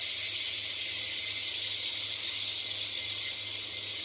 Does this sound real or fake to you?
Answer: real